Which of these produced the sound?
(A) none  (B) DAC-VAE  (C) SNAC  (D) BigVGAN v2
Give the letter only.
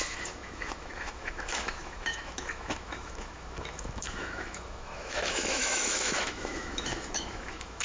B